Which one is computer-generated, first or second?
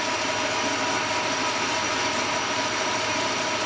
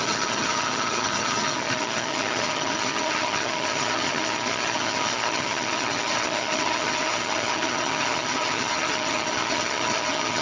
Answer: second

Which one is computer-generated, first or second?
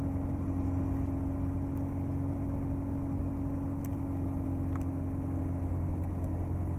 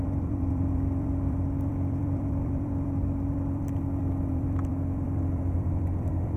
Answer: second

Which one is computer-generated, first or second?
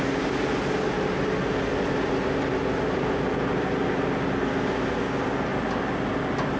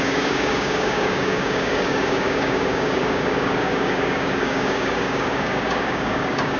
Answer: second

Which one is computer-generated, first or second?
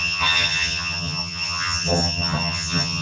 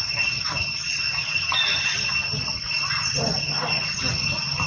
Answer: first